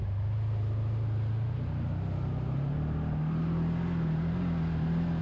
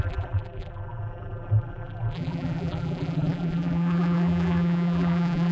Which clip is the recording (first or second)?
first